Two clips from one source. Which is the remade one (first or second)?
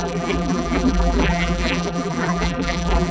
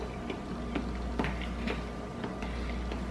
first